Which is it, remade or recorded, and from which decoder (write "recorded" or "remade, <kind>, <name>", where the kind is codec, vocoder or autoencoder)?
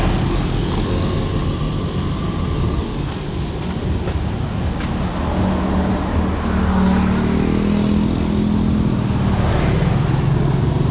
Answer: recorded